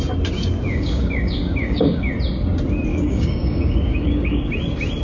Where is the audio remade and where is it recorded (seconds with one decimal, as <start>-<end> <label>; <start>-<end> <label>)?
0.0-0.7 recorded; 0.7-2.1 remade; 2.1-2.9 recorded; 2.9-4.5 remade; 4.5-5.0 recorded